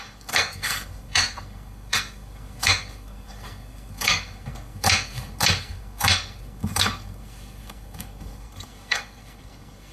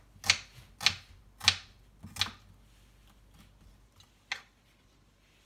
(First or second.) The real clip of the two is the second